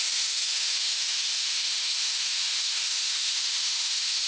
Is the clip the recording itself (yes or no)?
no